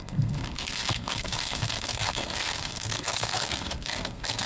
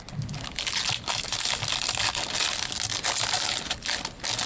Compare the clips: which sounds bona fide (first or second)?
second